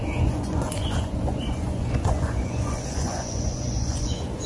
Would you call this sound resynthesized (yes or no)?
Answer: yes